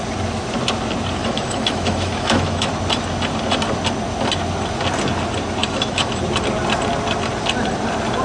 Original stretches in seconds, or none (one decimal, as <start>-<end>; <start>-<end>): 0.0-1.2; 2.7-5.6; 6.2-8.2